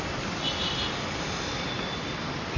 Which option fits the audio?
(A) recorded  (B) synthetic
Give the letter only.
B